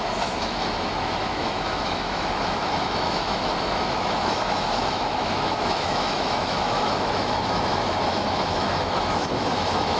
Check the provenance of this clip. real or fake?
fake